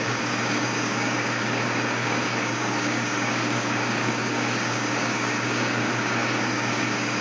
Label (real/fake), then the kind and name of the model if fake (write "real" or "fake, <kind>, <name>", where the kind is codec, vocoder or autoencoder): fake, codec, DAC